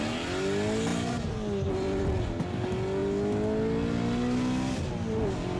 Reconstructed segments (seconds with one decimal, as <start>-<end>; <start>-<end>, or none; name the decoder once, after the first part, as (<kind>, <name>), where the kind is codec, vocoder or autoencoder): none